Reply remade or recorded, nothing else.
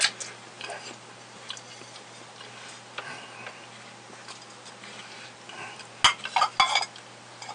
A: recorded